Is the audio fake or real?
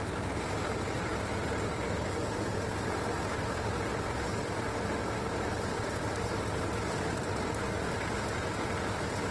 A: fake